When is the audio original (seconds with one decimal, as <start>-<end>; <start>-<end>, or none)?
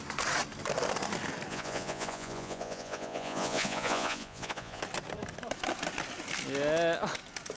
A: 0.0-1.5; 4.8-7.6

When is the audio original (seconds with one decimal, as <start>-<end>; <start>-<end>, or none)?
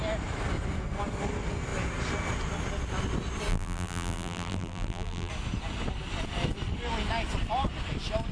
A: 0.0-3.5; 5.3-8.3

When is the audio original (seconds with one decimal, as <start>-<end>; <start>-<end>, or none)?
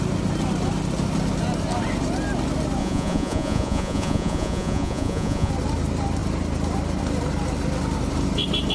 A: 0.0-2.8; 5.5-8.7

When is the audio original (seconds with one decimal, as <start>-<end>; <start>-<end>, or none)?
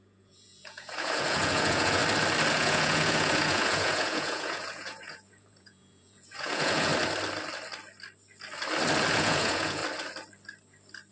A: 2.0-2.5; 6.9-9.1; 9.8-11.1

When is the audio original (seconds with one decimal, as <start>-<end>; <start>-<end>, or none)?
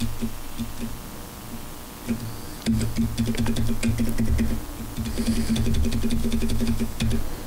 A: 0.0-6.2; 7.0-7.5